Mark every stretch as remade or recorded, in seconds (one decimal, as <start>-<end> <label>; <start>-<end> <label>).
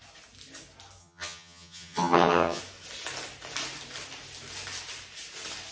0.0-1.0 recorded; 1.0-2.6 remade; 2.6-5.7 recorded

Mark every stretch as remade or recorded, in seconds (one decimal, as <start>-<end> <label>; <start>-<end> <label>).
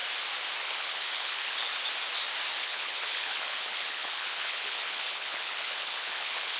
0.0-0.6 recorded; 0.6-1.7 remade; 1.7-2.6 recorded; 2.6-6.6 remade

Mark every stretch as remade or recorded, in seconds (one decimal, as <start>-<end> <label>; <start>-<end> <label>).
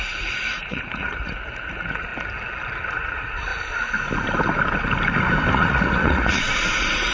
0.0-2.1 remade; 2.1-2.9 recorded; 2.9-3.5 remade; 3.5-5.5 recorded; 5.5-7.1 remade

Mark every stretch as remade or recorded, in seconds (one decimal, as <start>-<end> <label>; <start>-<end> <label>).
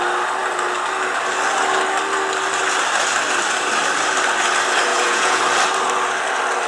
0.0-4.9 recorded; 4.9-5.4 remade; 5.4-6.7 recorded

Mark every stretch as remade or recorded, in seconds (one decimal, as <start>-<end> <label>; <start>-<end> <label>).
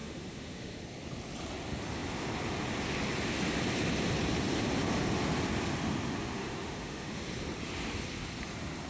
0.0-0.8 remade; 0.8-6.4 recorded; 6.4-7.1 remade; 7.1-8.9 recorded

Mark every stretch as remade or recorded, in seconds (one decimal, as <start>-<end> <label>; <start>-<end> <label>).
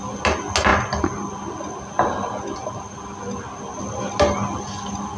0.0-5.2 recorded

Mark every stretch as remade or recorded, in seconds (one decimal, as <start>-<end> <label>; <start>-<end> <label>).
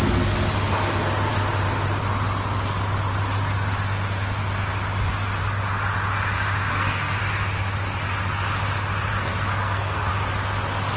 0.0-6.7 recorded; 6.7-7.2 remade; 7.2-9.1 recorded; 9.1-10.1 remade; 10.1-11.0 recorded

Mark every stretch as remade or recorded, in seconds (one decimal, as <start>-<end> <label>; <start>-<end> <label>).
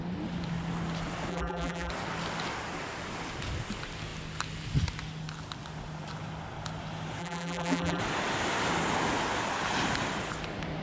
0.0-1.3 recorded; 1.3-1.9 remade; 1.9-7.2 recorded; 7.2-8.0 remade; 8.0-10.8 recorded